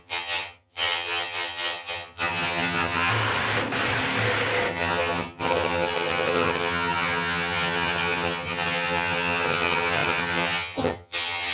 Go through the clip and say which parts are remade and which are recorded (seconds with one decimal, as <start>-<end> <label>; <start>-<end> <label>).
0.0-3.1 remade; 3.1-4.7 recorded; 4.7-11.5 remade